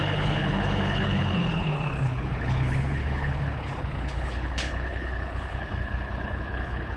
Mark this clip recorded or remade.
remade